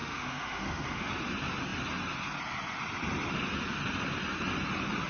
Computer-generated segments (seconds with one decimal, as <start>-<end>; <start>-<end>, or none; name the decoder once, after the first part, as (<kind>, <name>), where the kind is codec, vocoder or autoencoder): 0.0-1.1 (autoencoder, DAC-VAE)